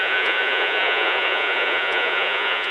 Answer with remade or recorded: remade